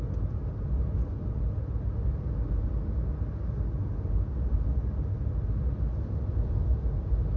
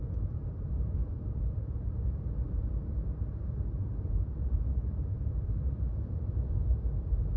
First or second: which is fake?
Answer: second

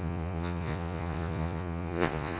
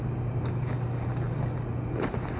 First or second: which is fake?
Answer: first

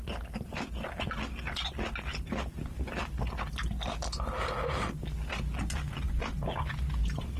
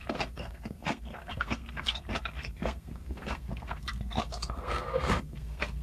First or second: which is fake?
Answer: second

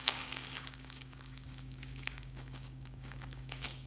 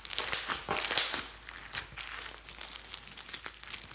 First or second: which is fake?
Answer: first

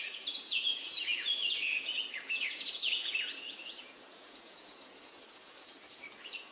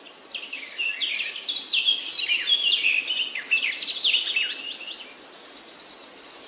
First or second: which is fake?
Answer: first